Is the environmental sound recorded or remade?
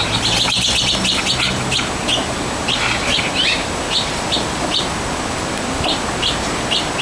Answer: recorded